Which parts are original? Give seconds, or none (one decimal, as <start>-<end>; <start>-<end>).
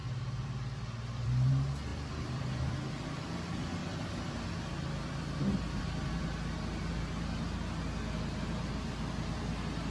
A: 1.5-1.9; 3.2-3.8; 4.3-9.9